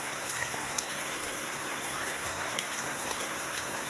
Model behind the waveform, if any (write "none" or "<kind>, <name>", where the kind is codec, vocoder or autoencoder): codec, SNAC